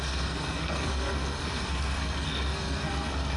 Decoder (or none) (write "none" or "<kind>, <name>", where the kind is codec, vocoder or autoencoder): codec, SNAC